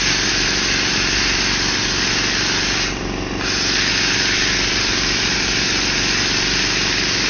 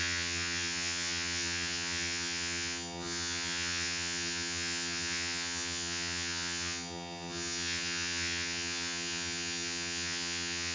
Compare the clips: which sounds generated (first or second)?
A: second